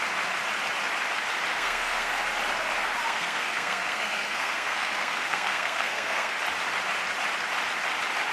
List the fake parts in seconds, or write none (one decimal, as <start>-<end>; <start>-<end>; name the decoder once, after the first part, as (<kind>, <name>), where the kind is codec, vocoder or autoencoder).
1.5-2.2 (codec, SNAC); 3.0-6.3

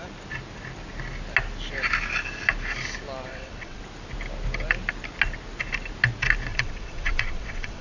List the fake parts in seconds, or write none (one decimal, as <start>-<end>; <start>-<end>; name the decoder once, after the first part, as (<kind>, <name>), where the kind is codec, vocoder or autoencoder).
3.3-3.8 (vocoder, WaveNeXt); 6.5-7.8

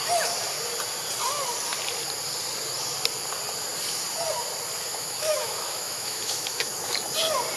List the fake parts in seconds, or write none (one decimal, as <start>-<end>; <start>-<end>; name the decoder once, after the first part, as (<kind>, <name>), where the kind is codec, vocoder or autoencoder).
4.9-6.9 (autoencoder, DAC-VAE)